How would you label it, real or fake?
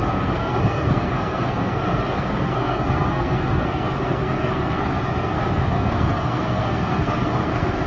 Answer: fake